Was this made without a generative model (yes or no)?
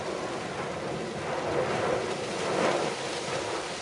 yes